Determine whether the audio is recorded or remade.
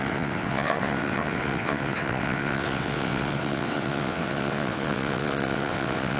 remade